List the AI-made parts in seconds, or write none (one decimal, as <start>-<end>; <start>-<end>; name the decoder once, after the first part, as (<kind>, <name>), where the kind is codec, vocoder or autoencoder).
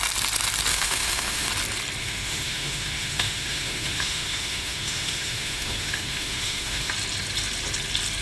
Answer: 0.7-1.5 (autoencoder, DAC-VAE); 2.0-6.9